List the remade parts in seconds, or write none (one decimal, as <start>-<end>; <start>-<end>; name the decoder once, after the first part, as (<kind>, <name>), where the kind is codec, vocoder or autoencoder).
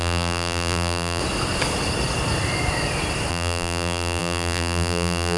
0.0-1.2 (vocoder, BigVGAN v2); 3.3-5.4